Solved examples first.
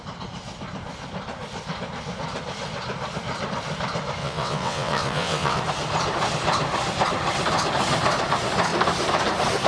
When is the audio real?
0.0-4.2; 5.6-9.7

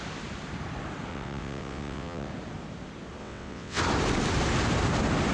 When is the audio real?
0.0-1.1; 2.3-3.2; 3.8-5.3

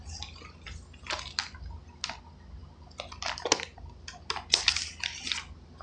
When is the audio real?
0.0-5.8

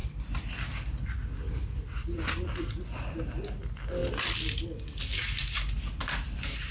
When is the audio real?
0.0-6.7

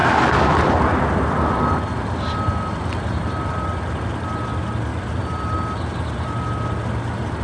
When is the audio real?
0.0-7.4